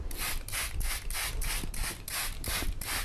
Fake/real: real